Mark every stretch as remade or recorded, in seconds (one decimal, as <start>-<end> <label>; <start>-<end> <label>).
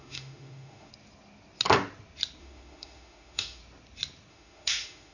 0.0-0.9 remade; 0.9-2.4 recorded; 2.4-3.6 remade; 3.6-4.3 recorded; 4.3-5.1 remade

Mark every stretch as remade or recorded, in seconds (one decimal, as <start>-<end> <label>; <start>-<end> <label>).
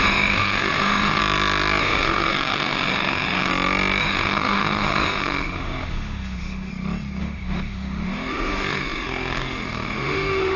0.0-1.2 remade; 1.2-1.8 recorded; 1.8-3.5 remade; 3.5-4.0 recorded; 4.0-6.7 remade; 6.7-7.2 recorded; 7.2-10.6 remade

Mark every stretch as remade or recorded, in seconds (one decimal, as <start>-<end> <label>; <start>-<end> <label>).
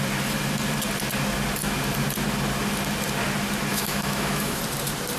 0.0-3.7 recorded; 3.7-4.6 remade; 4.6-5.2 recorded